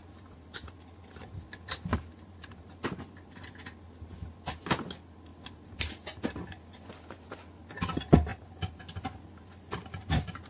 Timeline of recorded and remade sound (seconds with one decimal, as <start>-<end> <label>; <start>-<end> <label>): 0.0-1.9 recorded; 1.9-3.3 remade; 3.3-5.3 recorded; 5.3-5.9 remade; 5.9-10.5 recorded